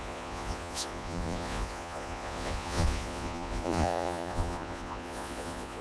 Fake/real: fake